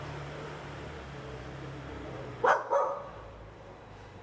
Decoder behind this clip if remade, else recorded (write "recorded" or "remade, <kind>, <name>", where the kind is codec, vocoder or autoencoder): remade, vocoder, BigVGAN v2